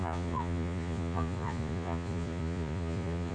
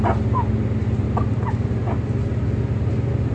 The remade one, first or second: first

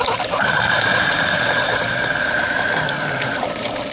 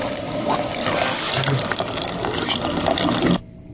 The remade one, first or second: first